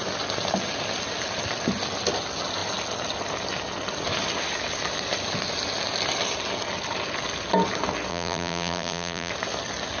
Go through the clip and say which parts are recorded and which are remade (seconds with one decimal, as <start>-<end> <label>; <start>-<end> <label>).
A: 0.0-8.1 recorded; 8.1-9.3 remade; 9.3-10.0 recorded